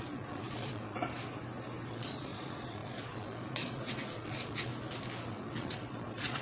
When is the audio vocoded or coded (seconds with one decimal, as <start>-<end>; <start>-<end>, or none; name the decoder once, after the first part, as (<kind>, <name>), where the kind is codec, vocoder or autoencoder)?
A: 0.0-1.0 (vocoder, Vocos); 1.9-4.7; 5.3-6.4